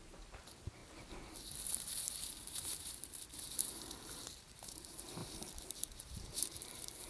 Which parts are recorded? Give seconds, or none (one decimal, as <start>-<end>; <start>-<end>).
0.8-2.0; 5.2-6.0